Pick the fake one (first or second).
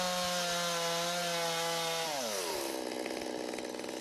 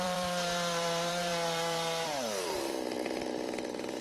second